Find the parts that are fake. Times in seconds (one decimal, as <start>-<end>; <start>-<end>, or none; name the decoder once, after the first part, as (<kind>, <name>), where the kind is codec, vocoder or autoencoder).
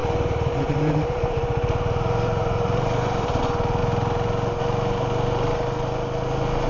0.0-3.4 (vocoder, BigVGAN v2)